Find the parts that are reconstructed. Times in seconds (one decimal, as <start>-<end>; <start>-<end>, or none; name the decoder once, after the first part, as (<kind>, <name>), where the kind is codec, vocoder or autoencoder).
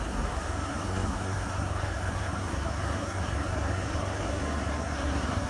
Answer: 0.0-5.5 (codec, SNAC)